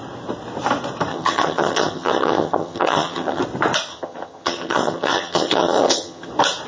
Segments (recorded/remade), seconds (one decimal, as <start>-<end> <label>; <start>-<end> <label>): 0.0-1.1 recorded; 1.1-3.4 remade; 3.4-3.9 recorded; 3.9-6.3 remade; 6.3-6.7 recorded